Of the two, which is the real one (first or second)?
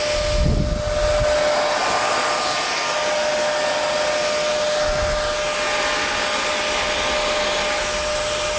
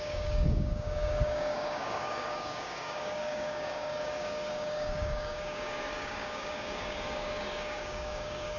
first